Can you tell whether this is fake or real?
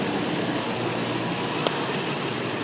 real